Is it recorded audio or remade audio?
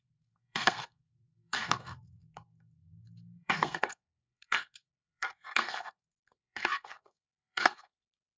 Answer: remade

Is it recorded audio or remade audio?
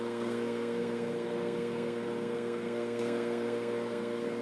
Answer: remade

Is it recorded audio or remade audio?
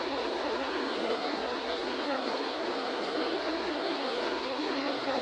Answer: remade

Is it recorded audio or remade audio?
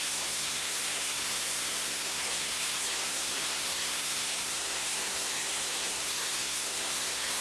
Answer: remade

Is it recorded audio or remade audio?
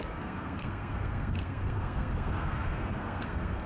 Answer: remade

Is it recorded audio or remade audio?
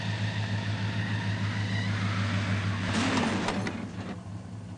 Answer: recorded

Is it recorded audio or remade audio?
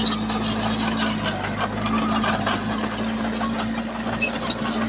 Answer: recorded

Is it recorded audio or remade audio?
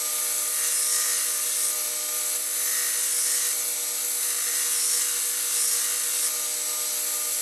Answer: recorded